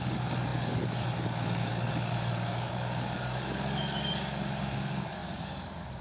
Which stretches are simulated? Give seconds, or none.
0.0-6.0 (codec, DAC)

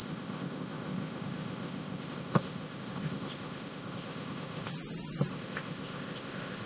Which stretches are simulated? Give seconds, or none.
0.0-4.7 (codec, ZipCodec); 5.3-6.7

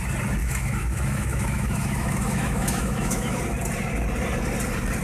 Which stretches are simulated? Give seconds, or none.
0.4-3.4 (autoencoder, DAC-VAE)

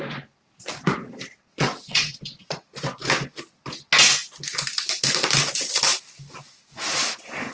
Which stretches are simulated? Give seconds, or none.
1.5-2.5 (vocoder, WaveNeXt)

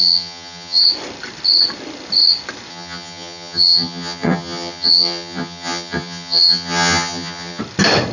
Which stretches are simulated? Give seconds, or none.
0.0-0.8 (vocoder, HiFi-GAN); 2.7-7.6

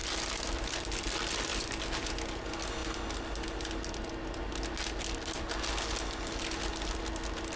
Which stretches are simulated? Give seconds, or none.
0.0-0.7 (vocoder, BigVGAN v2); 1.5-2.1

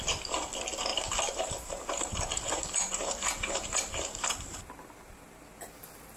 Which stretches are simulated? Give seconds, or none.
0.9-4.6 (vocoder, BigVGAN v2)